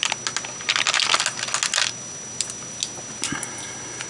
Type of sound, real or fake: real